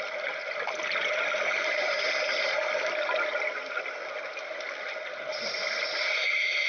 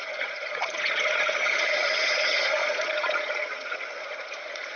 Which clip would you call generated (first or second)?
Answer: second